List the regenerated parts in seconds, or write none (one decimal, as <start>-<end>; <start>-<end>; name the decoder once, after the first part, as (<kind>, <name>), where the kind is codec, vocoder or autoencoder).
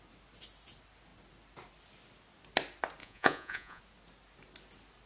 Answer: 3.0-3.8 (vocoder, Vocos)